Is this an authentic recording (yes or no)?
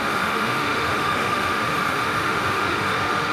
no